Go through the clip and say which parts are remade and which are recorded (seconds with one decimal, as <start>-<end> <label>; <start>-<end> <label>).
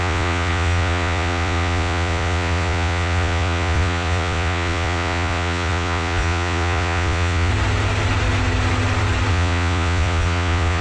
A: 0.0-7.5 remade; 7.5-9.3 recorded; 9.3-10.8 remade